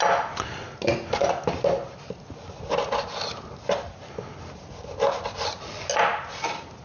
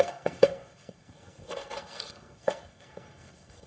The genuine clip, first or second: first